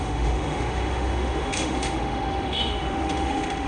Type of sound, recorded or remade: remade